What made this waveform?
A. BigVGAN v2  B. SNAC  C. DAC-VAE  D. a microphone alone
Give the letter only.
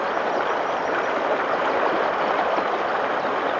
D